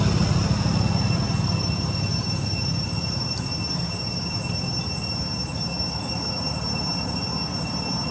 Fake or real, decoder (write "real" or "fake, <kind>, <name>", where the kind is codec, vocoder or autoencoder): real